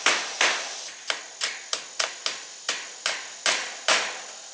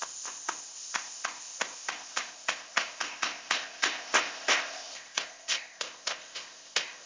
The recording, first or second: first